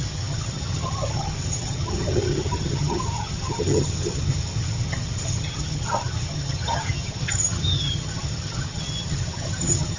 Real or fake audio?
fake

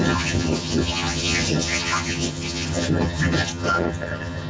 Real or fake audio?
fake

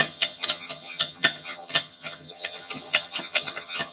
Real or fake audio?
fake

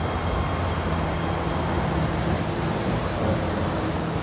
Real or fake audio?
real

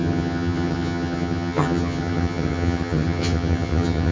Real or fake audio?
fake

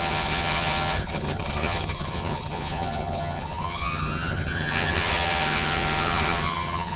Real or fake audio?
fake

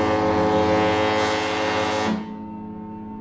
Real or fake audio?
real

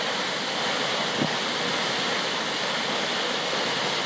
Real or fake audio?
real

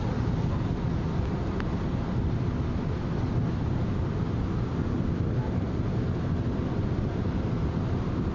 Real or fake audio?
real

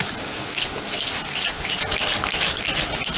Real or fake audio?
real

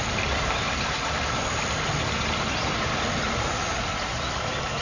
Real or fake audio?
real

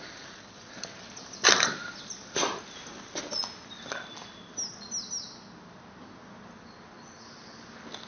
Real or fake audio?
real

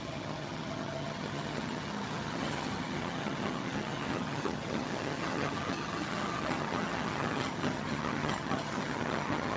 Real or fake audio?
fake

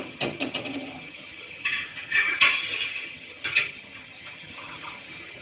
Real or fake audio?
fake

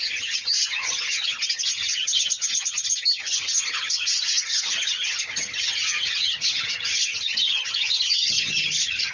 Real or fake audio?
fake